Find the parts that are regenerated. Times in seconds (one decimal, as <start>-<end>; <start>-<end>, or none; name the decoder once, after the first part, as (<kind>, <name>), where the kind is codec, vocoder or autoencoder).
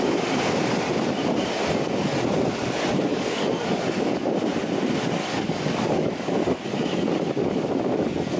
3.1-4.7 (codec, DAC); 5.2-7.7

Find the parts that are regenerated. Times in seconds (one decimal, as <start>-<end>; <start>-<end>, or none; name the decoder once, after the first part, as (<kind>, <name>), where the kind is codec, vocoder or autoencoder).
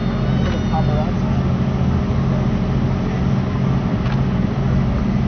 none